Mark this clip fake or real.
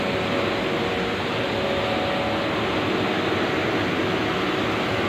real